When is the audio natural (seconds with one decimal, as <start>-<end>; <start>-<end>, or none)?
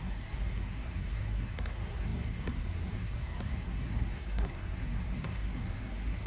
none